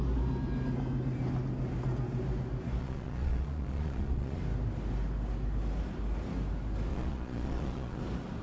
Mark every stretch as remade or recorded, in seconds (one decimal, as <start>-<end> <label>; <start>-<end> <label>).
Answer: 0.0-2.8 recorded; 2.8-4.4 remade; 4.4-6.9 recorded; 6.9-8.0 remade; 8.0-8.4 recorded